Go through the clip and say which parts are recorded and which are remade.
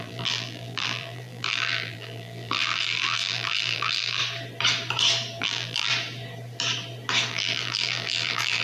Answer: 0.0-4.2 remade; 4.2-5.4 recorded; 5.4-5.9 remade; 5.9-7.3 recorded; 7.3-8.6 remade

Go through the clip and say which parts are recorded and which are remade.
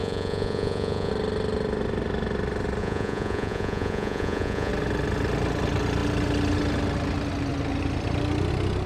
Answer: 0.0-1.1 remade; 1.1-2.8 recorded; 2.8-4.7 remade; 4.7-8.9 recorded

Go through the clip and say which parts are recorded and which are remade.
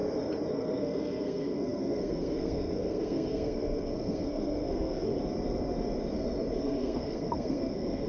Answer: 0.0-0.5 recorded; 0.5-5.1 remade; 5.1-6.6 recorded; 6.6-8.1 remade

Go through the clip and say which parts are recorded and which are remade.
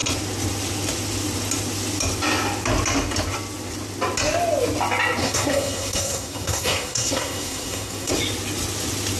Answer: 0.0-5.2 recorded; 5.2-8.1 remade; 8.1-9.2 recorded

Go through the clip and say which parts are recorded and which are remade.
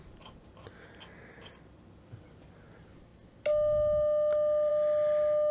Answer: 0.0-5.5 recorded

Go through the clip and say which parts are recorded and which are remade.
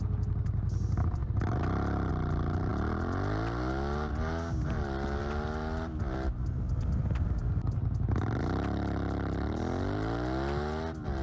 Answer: 0.0-11.2 recorded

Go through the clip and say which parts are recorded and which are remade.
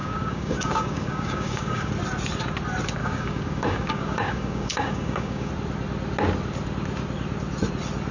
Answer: 0.0-1.9 remade; 1.9-3.0 recorded; 3.0-5.5 remade; 5.5-8.1 recorded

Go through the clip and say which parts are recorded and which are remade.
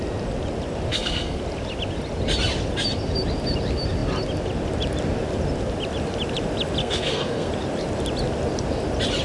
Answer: 0.0-0.9 recorded; 0.9-1.4 remade; 1.4-6.8 recorded; 6.8-7.5 remade; 7.5-9.2 recorded